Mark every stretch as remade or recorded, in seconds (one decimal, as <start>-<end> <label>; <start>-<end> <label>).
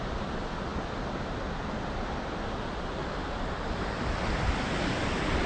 0.0-5.5 recorded